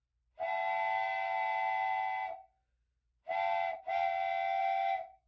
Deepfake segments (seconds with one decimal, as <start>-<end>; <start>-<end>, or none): 4.6-5.3